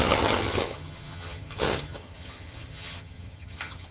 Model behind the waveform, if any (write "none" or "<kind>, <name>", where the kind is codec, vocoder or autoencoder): vocoder, HiFi-GAN